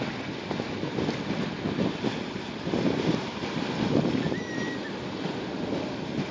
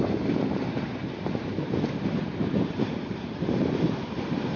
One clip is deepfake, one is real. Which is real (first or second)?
first